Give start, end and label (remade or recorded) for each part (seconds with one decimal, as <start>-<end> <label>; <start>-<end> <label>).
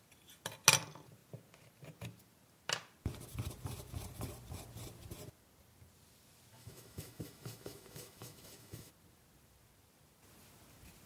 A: 0.0-6.6 recorded; 6.6-8.9 remade; 8.9-11.1 recorded